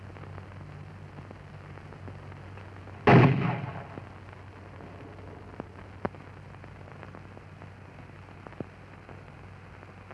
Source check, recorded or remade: recorded